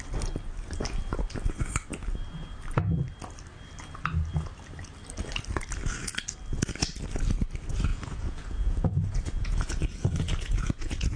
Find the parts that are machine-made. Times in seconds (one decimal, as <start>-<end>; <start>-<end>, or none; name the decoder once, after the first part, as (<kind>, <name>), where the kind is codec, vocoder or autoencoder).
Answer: 7.9-11.2 (vocoder, Vocos)